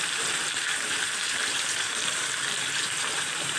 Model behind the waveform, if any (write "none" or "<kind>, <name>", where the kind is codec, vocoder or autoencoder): vocoder, BigVGAN v2